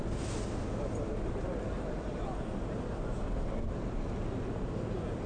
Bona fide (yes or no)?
yes